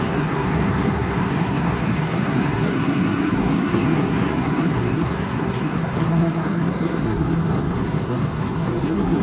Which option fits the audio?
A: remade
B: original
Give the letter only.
A